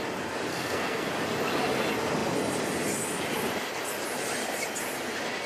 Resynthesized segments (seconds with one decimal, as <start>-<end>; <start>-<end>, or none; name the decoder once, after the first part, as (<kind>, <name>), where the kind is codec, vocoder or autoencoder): 0.5-1.1 (codec, SNAC)